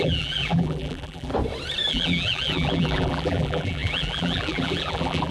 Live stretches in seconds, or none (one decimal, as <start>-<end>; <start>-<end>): 1.3-1.9